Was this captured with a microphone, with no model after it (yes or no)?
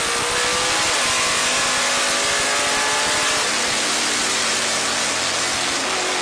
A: yes